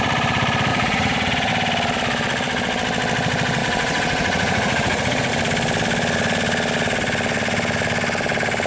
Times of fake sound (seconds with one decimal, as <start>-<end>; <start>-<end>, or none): 0.7-1.5; 3.6-5.3